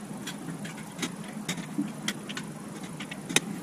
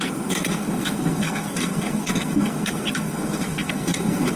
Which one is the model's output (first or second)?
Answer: second